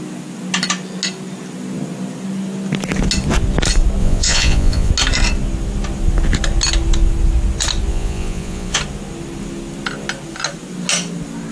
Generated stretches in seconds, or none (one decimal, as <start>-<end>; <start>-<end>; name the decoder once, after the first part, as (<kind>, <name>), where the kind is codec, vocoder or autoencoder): 4.0-4.9 (vocoder, Vocos); 7.9-8.8